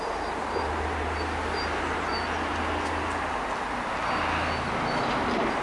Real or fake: real